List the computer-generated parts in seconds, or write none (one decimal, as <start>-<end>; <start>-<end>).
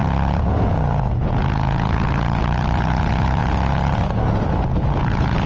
0.0-5.5